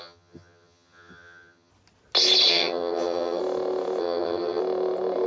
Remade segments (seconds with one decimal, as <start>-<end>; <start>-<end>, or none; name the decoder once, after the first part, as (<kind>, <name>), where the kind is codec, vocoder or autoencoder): 0.0-1.7 (vocoder, HiFi-GAN); 2.5-3.4; 4.0-4.6